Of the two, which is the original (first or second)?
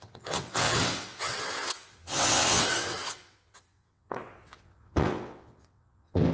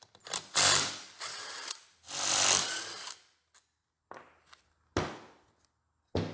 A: second